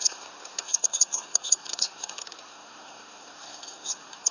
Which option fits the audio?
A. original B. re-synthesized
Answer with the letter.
B